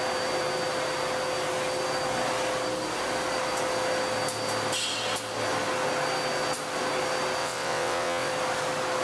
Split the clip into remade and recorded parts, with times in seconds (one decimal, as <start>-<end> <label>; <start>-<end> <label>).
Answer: 0.0-7.4 recorded; 7.4-8.3 remade; 8.3-9.0 recorded